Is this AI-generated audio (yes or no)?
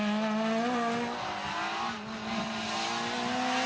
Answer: no